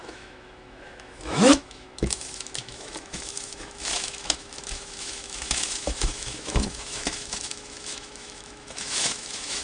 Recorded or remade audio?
remade